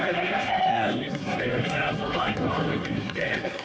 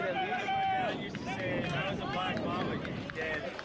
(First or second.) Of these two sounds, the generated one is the first